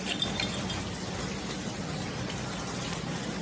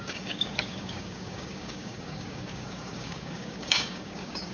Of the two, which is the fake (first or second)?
second